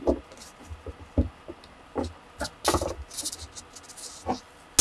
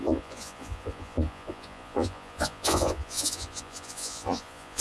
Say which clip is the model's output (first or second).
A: second